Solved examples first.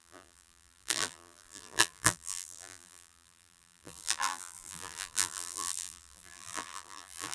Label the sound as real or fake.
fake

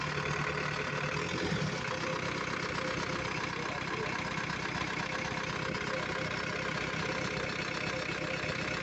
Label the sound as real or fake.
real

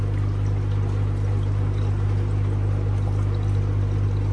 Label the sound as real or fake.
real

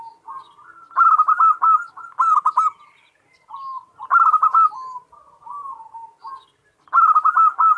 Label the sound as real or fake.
real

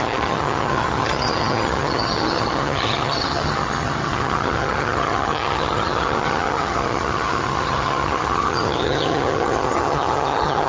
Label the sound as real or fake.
fake